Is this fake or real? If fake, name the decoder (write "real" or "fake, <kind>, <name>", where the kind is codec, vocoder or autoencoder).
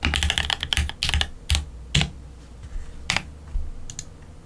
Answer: real